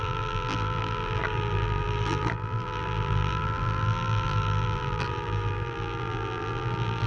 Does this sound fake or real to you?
fake